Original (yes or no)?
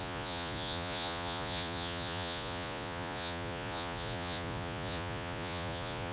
no